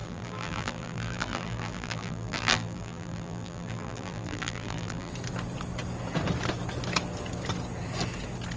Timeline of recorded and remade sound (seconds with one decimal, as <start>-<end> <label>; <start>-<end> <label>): 0.0-5.1 remade; 5.1-8.6 recorded